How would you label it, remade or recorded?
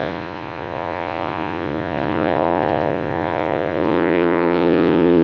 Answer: remade